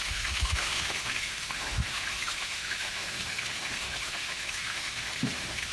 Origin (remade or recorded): remade